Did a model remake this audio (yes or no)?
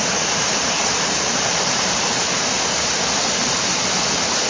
yes